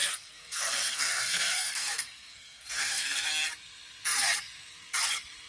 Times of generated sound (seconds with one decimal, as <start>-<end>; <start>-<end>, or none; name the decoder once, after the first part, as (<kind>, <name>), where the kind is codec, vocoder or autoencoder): 0.0-3.3 (codec, SNAC)